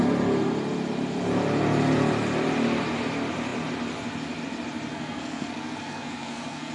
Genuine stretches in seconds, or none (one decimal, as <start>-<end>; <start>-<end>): 0.0-4.9